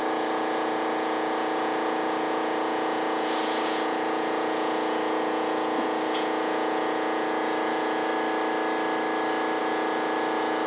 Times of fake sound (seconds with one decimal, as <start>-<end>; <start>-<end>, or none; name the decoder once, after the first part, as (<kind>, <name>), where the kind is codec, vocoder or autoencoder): 0.0-8.1 (vocoder, Vocos); 9.6-10.7